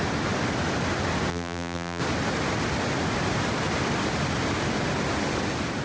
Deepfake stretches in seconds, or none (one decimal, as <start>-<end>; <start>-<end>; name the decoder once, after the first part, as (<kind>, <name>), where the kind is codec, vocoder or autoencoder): 1.3-2.0 (vocoder, BigVGAN v2)